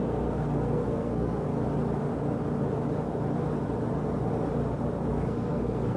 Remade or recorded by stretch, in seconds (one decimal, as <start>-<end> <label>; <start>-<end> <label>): 0.0-1.5 remade; 1.5-5.1 recorded; 5.1-6.0 remade